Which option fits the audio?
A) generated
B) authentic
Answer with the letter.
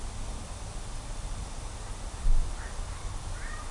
B